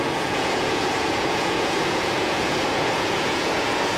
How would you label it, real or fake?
fake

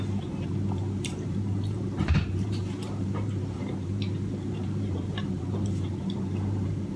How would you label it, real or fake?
fake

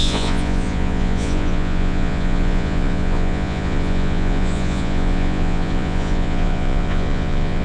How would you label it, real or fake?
fake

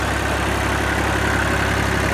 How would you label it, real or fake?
real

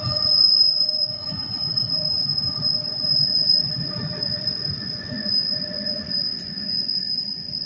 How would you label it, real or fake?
fake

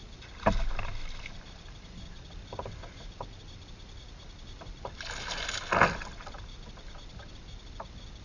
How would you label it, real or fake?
real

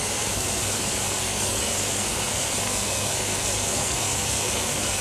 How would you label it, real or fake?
fake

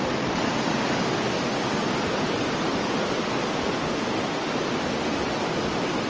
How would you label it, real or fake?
real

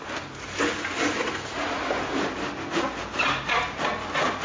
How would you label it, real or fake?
real